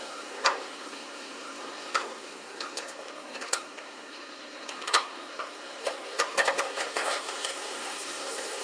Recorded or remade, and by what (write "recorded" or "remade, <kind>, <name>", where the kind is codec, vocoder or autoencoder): remade, codec, SNAC